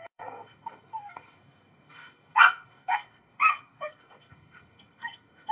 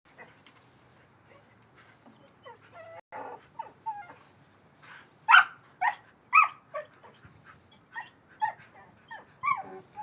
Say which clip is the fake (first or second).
first